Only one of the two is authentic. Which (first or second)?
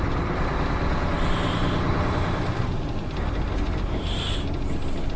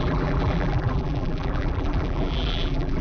first